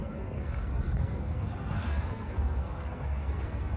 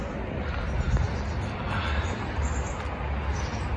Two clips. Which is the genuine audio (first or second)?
second